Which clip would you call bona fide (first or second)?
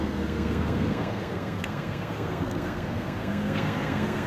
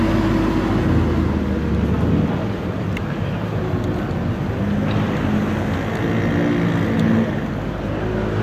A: second